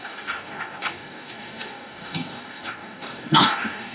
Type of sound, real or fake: fake